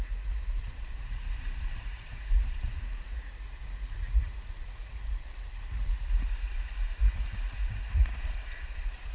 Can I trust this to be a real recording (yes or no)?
no